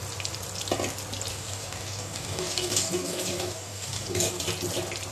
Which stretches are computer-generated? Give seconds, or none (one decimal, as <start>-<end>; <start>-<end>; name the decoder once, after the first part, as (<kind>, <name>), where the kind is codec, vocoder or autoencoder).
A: 1.3-4.4 (codec, DAC)